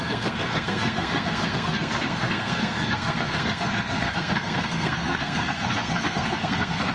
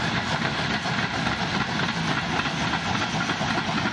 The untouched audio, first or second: second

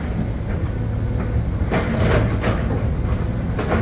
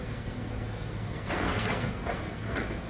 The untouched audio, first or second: first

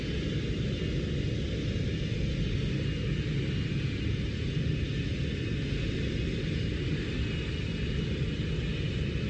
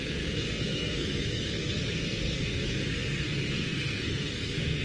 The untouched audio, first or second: first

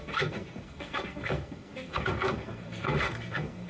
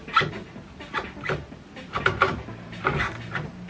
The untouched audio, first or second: second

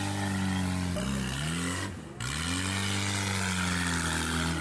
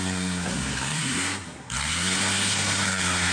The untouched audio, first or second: first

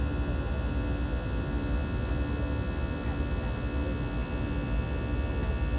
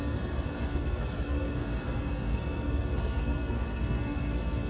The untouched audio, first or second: first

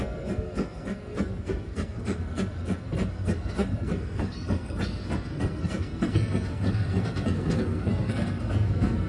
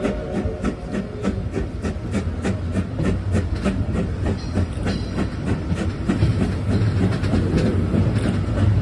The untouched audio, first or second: second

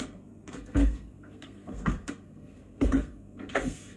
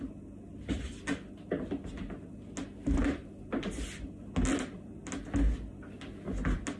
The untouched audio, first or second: second